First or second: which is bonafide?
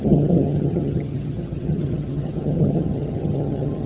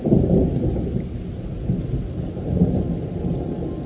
second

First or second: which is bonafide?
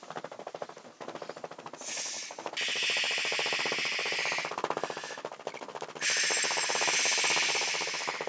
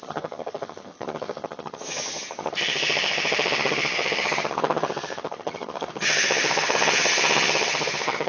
first